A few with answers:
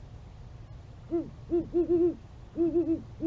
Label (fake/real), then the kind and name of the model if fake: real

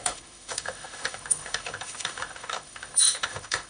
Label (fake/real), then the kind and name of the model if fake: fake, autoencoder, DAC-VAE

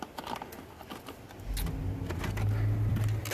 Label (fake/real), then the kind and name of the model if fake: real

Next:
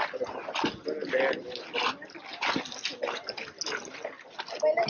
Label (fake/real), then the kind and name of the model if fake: real